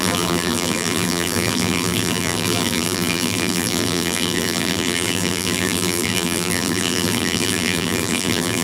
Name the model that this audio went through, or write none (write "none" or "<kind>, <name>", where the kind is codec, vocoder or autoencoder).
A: vocoder, BigVGAN v2